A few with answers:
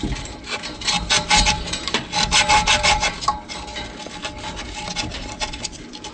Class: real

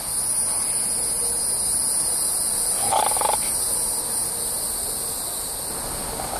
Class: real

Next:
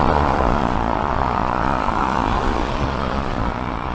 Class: fake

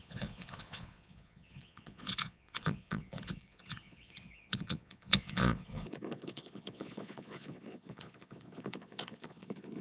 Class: fake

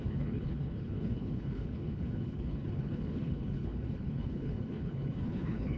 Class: fake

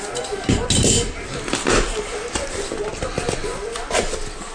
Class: real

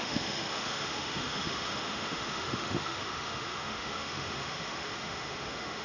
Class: fake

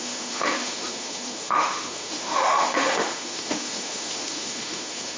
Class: fake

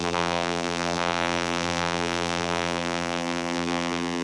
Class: fake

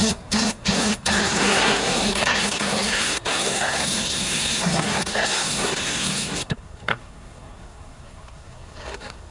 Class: fake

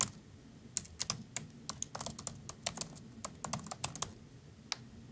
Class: real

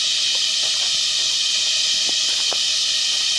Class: real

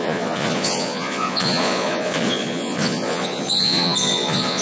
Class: fake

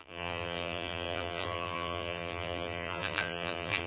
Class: fake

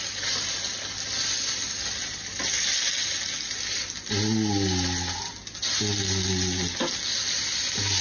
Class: real